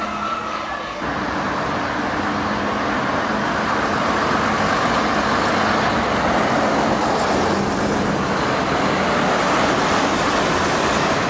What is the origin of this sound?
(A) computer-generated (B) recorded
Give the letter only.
B